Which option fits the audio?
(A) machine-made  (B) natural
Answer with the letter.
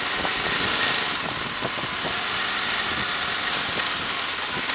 B